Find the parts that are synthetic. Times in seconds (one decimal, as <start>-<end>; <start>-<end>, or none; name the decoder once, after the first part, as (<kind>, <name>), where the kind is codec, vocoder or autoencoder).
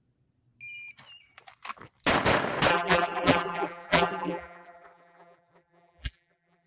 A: 2.7-6.7 (vocoder, BigVGAN v2)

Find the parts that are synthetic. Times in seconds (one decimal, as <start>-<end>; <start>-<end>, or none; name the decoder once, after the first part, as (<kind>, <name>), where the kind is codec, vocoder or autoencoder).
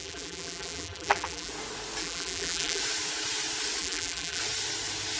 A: 0.0-1.5 (vocoder, BigVGAN v2); 2.0-2.8; 3.8-4.4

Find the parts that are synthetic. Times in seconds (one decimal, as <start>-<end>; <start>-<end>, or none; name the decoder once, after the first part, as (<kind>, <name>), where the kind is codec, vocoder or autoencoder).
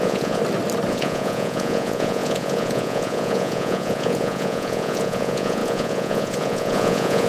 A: 0.0-0.4 (vocoder, Vocos); 0.9-7.3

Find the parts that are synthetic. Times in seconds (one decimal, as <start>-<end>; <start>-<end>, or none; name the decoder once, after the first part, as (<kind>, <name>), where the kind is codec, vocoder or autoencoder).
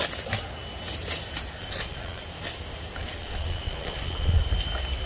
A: 1.6-2.2 (vocoder, Vocos); 3.0-4.4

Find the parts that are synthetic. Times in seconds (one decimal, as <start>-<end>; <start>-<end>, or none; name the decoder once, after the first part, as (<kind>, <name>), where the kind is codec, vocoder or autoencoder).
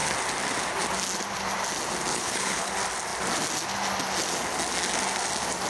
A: 2.1-2.7 (codec, HILCodec)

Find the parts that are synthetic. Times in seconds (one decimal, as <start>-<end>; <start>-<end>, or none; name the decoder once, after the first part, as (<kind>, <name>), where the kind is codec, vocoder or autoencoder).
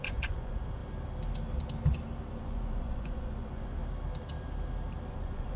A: 0.0-0.8 (vocoder, Vocos); 2.3-3.8; 5.1-5.6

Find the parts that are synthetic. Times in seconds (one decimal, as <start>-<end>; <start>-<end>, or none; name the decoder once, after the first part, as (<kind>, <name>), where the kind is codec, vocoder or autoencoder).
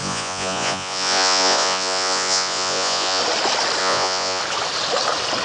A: 0.0-3.2 (vocoder, Vocos); 3.8-4.4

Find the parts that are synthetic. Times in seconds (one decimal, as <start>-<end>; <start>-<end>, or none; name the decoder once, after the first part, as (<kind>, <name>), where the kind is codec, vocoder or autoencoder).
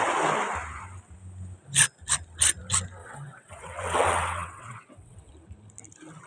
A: 3.0-5.3 (vocoder, WaveNeXt)